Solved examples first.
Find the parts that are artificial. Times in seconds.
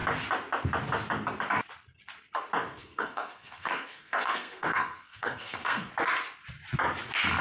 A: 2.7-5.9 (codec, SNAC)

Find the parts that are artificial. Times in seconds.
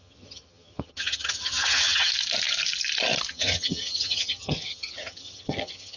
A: 0.0-2.1 (vocoder, HiFi-GAN); 3.3-6.0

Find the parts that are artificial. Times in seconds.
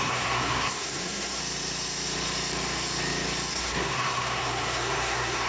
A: 0.0-1.4 (codec, SNAC); 3.5-5.5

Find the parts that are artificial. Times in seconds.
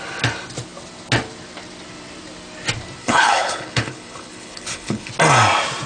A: 3.0-5.1 (codec, HILCodec)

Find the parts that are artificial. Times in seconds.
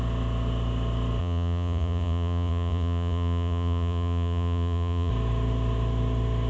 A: 1.2-5.1 (vocoder, Vocos)